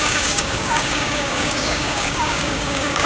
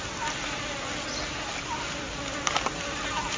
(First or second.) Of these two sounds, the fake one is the first